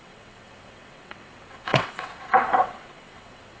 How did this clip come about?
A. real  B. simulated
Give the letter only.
B